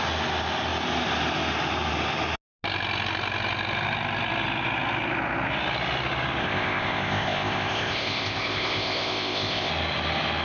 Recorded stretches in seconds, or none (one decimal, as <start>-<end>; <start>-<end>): 0.0-6.4; 9.7-10.4